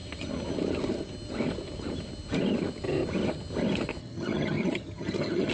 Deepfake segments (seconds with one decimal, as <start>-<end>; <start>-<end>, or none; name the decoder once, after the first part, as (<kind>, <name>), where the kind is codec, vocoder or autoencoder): 4.0-5.5 (vocoder, HiFi-GAN)